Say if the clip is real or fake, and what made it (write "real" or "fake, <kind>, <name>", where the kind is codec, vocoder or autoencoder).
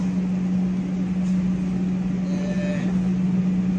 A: real